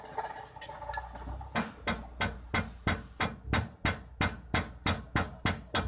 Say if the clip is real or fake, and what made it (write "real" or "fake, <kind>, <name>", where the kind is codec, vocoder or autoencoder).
real